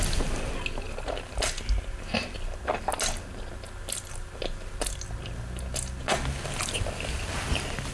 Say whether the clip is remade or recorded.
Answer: recorded